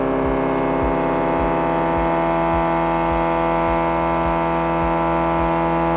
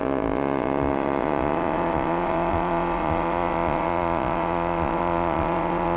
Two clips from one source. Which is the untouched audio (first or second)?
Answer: first